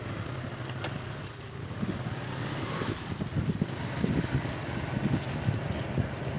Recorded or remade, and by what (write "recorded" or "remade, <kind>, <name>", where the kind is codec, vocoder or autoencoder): recorded